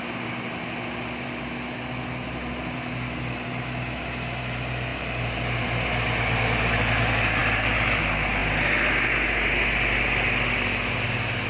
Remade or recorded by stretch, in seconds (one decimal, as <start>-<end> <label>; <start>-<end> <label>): 0.0-11.5 recorded